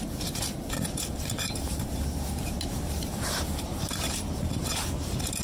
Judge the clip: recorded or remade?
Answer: remade